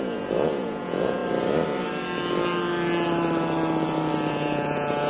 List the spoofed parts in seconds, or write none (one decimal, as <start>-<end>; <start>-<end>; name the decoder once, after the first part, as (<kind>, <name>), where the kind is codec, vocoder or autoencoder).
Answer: 0.0-1.2 (vocoder, Vocos); 4.3-5.1